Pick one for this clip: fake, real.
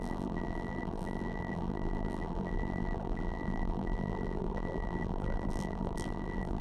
fake